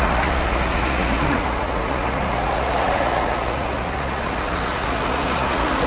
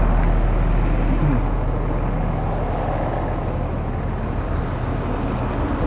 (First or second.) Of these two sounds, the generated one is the first